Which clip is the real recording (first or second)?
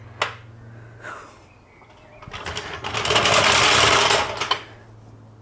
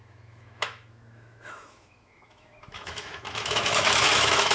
first